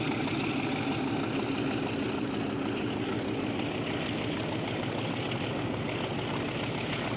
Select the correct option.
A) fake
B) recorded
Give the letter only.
B